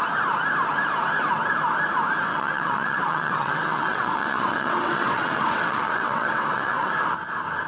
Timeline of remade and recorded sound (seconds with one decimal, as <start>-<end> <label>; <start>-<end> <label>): 0.0-2.3 recorded; 2.3-6.9 remade; 6.9-7.7 recorded